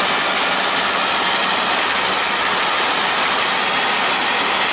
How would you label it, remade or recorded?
recorded